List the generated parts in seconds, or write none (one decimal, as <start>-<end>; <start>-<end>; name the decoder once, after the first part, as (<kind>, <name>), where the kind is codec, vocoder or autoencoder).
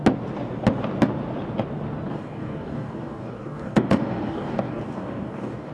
2.1-5.7 (codec, DAC)